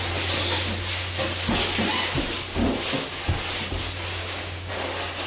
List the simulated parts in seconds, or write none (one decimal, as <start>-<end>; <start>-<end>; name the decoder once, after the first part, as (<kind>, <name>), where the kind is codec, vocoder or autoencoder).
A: 4.2-4.7 (codec, DAC)

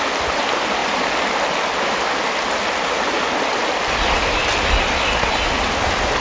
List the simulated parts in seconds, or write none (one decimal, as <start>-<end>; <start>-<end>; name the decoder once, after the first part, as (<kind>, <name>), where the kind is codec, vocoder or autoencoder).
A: none